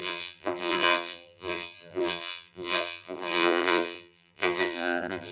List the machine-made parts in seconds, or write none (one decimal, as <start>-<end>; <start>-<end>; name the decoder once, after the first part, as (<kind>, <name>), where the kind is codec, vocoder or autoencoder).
0.0-5.3 (vocoder, BigVGAN v2)